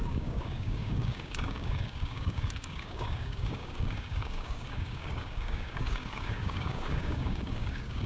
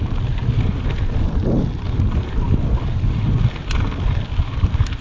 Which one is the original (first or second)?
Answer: second